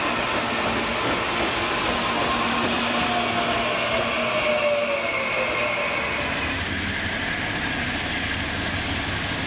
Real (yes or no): yes